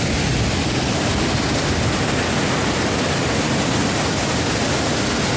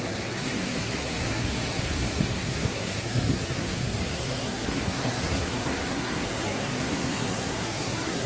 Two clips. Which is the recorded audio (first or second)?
first